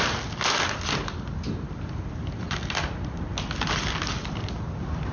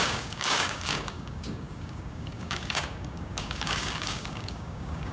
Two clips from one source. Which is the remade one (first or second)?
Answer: second